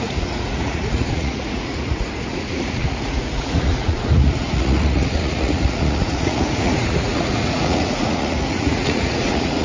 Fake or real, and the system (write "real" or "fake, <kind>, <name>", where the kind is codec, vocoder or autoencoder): fake, vocoder, Vocos